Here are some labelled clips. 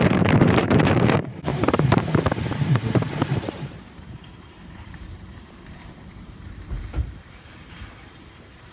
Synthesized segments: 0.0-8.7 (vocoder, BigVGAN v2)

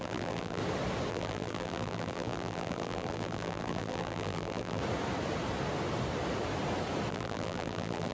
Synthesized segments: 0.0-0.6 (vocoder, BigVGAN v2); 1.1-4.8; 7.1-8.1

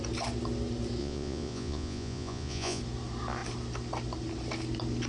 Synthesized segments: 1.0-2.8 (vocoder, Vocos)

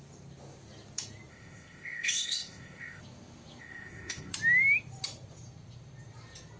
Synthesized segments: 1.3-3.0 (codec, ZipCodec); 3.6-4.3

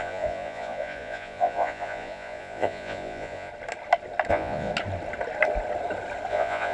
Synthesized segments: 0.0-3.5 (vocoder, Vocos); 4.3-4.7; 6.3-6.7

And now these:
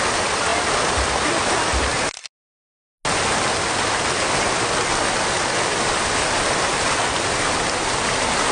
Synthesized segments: 0.5-2.0 (vocoder, BigVGAN v2)